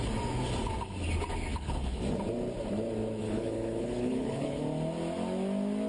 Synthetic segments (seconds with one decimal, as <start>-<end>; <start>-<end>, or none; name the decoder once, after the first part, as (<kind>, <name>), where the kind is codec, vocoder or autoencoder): 1.5-2.0 (codec, HILCodec); 3.2-4.6